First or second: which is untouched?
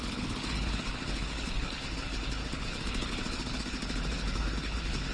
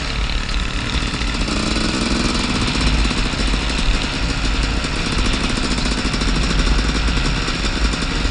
second